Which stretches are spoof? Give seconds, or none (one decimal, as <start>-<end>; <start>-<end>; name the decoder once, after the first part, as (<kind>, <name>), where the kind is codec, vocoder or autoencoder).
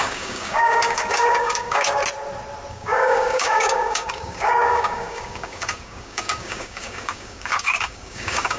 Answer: 0.0-2.0 (codec, DAC); 2.7-8.6